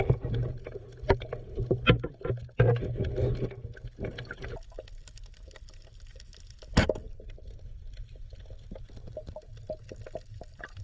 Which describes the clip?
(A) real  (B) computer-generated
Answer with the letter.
A